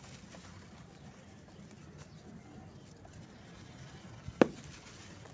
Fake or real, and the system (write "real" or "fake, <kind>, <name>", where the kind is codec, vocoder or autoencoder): real